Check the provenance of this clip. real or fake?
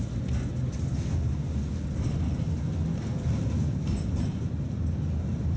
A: real